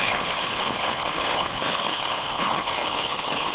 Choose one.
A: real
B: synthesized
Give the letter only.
B